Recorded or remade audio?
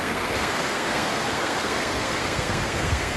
remade